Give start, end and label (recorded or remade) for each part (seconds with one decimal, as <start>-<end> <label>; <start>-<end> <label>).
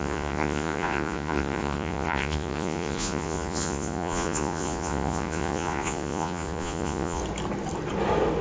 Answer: 0.0-7.2 remade; 7.2-8.4 recorded